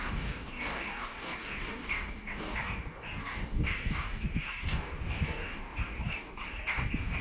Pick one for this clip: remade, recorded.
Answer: remade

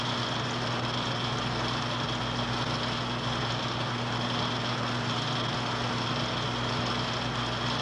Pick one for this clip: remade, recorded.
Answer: recorded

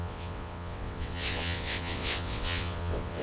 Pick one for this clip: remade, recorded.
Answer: remade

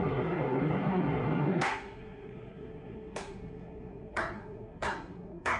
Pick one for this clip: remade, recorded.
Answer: remade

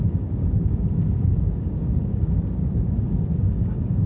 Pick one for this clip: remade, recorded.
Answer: remade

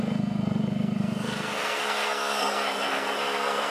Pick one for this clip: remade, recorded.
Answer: remade